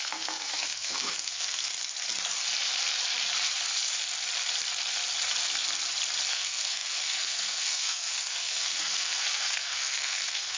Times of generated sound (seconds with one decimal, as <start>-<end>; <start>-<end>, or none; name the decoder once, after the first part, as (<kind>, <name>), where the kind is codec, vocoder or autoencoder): 0.0-1.6 (codec, SNAC); 6.3-10.6